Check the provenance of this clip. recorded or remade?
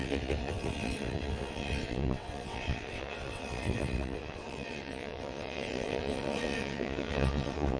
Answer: remade